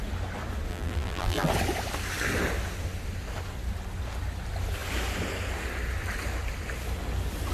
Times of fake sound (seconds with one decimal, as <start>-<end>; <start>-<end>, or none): 0.7-1.5